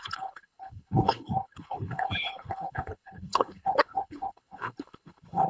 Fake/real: fake